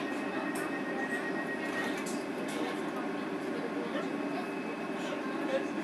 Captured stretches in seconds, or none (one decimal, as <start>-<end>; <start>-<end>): 0.0-5.8

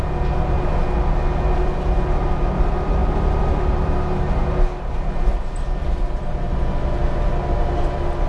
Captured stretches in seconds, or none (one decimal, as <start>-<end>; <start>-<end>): 0.0-8.3

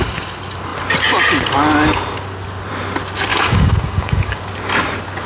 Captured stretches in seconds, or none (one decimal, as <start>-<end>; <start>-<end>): 0.0-3.3; 4.4-5.3